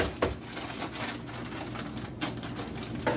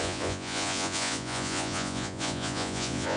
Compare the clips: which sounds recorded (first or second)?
first